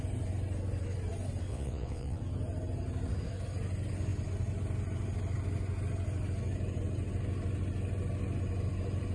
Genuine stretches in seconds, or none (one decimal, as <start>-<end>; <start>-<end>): 0.0-1.5; 2.2-9.1